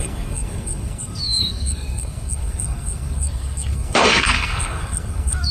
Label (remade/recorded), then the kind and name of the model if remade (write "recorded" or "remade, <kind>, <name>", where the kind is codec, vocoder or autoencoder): remade, codec, SNAC